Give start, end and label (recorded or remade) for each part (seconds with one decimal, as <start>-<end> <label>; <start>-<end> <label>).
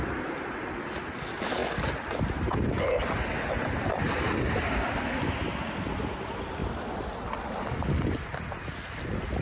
0.0-1.6 recorded; 1.6-2.2 remade; 2.2-6.6 recorded; 6.6-9.0 remade; 9.0-9.4 recorded